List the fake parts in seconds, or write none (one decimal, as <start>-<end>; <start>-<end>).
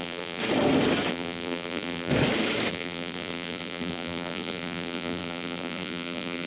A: 0.0-0.4; 1.1-2.1; 2.7-6.5